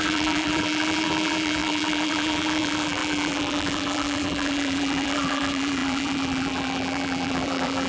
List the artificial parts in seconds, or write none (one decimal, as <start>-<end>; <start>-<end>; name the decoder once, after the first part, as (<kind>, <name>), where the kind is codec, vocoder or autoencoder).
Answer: 0.0-7.9 (vocoder, BigVGAN v2)